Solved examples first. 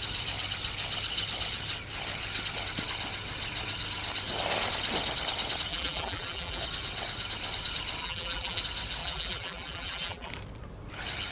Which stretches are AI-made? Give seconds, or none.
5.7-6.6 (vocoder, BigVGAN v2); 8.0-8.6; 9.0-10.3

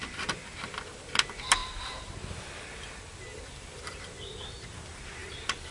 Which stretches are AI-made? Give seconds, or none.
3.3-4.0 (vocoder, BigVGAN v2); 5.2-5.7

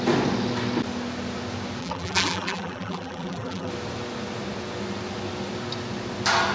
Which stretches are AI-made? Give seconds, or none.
1.8-3.7 (vocoder, BigVGAN v2)

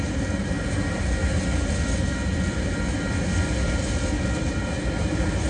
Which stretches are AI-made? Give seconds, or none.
0.0-1.2 (vocoder, BigVGAN v2); 4.5-5.5